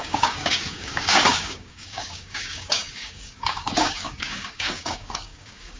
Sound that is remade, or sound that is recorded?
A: remade